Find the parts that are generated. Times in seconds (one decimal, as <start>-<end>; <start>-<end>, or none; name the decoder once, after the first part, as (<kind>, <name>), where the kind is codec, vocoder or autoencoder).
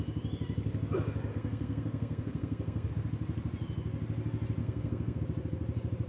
1.3-2.9 (codec, SNAC); 4.6-5.2